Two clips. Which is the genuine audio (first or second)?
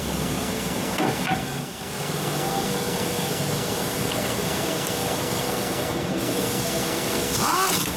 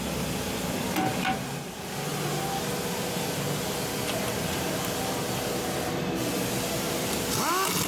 second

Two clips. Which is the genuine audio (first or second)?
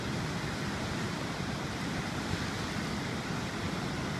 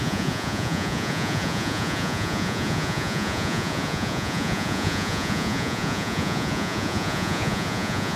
first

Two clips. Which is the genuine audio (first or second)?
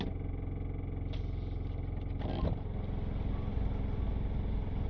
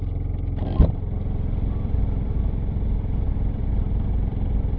first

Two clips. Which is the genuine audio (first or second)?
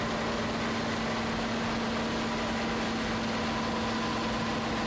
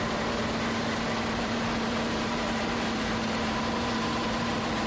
first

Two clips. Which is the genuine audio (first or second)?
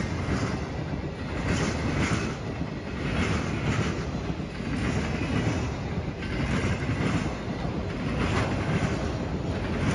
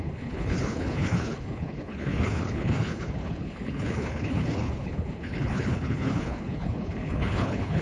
first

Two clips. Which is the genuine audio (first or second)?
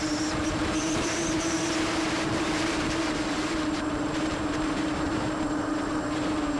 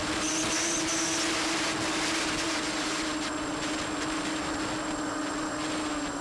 second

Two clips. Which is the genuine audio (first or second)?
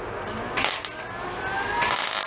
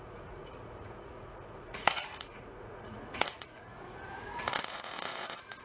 first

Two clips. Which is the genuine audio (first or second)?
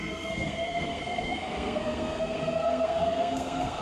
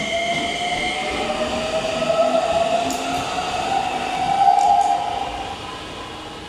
second